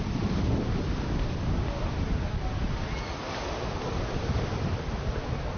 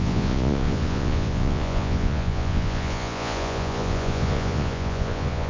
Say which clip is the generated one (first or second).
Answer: second